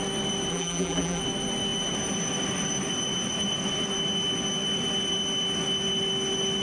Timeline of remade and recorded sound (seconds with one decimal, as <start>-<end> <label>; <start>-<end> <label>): 0.0-0.5 recorded; 0.5-1.2 remade; 1.2-6.6 recorded